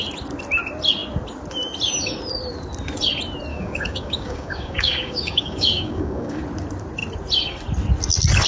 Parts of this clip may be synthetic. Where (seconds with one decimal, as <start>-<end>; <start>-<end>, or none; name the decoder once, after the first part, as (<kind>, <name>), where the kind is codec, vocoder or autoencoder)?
3.5-6.4 (codec, DAC)

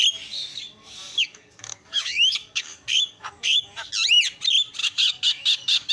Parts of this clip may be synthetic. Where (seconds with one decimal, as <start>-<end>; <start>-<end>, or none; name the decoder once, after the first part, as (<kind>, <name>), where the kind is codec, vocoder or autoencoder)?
0.5-3.9 (codec, DAC); 4.8-5.9

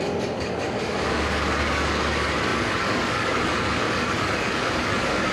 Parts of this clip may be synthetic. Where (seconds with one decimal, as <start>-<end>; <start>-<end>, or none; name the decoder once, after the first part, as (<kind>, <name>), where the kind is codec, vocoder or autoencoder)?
0.0-5.3 (codec, DAC)